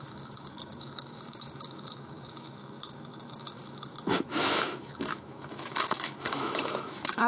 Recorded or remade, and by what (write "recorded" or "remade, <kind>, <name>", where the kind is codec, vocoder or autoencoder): remade, autoencoder, DAC-VAE